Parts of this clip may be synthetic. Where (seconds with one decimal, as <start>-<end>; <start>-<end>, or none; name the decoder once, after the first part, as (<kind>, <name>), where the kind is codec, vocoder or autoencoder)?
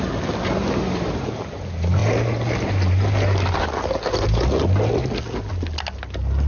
none